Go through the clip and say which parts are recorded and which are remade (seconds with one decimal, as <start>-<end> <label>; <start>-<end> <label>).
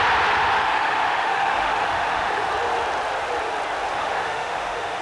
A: 0.0-0.6 recorded; 0.6-2.5 remade; 2.5-3.9 recorded; 3.9-5.0 remade